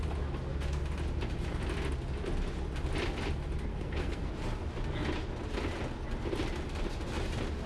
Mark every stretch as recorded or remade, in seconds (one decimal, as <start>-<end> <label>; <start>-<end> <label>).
0.0-3.7 recorded; 3.7-4.3 remade; 4.3-7.7 recorded